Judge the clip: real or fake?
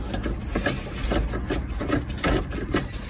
real